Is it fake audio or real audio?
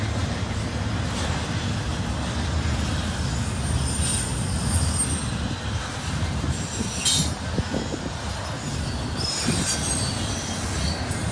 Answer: real